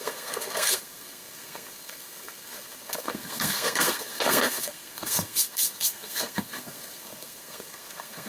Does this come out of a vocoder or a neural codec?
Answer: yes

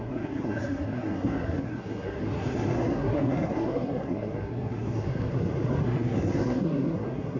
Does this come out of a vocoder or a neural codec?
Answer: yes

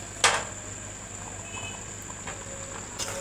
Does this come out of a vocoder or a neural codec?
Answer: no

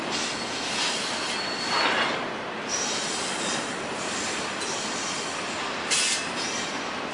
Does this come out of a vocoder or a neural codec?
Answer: no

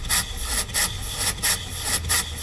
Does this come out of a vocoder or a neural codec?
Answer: no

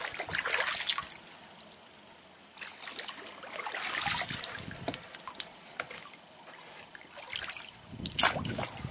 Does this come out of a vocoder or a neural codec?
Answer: no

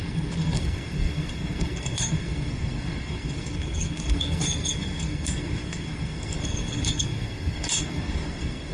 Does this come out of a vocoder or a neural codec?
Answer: yes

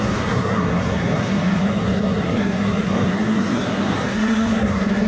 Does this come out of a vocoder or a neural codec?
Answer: yes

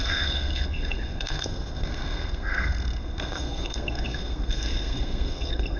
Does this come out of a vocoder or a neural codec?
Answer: yes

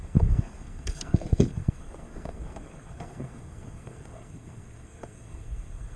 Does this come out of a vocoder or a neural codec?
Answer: yes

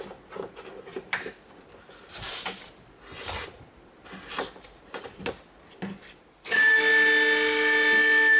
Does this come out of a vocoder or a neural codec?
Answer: no